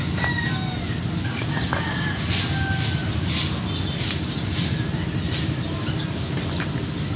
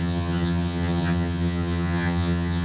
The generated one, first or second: second